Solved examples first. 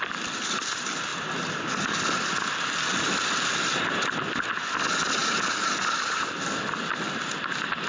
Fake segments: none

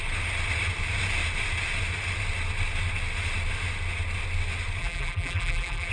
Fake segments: 4.8-5.9 (vocoder, BigVGAN v2)